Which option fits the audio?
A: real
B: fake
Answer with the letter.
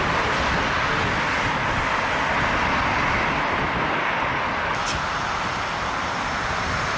A